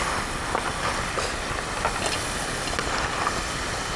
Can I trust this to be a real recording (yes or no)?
yes